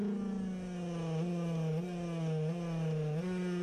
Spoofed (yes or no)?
no